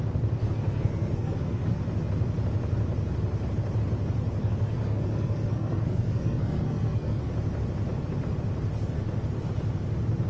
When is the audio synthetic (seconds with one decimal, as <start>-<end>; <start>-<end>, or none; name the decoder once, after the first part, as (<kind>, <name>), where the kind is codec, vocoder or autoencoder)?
0.4-1.8 (codec, SNAC); 4.4-7.3